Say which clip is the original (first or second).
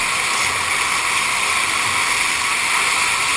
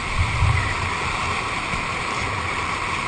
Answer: first